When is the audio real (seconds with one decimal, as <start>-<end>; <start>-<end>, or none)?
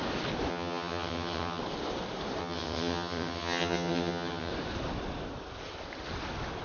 0.0-0.5; 1.6-2.4; 4.5-6.6